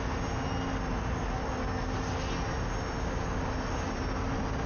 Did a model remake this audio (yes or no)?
no